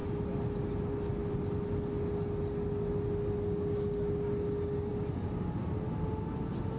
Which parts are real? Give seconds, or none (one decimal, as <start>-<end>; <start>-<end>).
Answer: 0.0-6.8